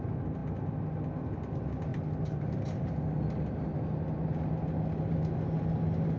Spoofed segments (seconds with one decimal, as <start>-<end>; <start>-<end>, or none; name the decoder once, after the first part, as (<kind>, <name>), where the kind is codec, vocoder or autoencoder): none